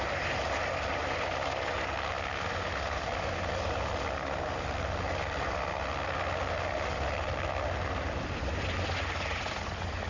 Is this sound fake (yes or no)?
no